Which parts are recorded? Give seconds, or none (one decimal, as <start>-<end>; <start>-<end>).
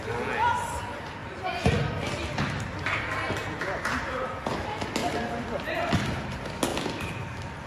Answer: 0.0-7.7